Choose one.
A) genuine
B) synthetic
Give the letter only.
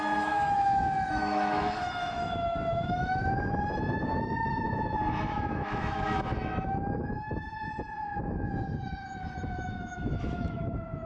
B